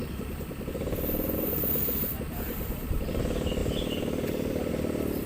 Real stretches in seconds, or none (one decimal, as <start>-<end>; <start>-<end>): 3.2-3.6; 4.7-5.3